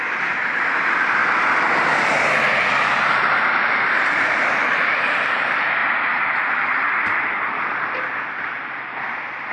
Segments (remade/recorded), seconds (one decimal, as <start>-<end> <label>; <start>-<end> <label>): 0.0-1.2 remade; 1.2-2.7 recorded; 2.7-5.8 remade; 5.8-6.5 recorded; 6.5-9.5 remade